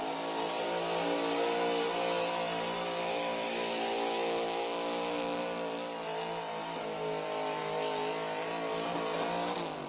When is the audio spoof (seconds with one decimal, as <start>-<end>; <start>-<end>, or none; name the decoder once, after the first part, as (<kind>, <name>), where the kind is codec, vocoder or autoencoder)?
3.0-5.4 (autoencoder, DAC-VAE)